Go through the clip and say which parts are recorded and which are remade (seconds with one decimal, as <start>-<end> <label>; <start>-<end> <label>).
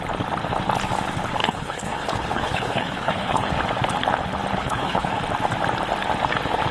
0.0-1.4 recorded; 1.4-3.5 remade; 3.5-4.6 recorded; 4.6-5.2 remade; 5.2-6.7 recorded